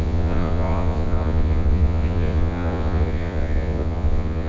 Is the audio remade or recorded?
remade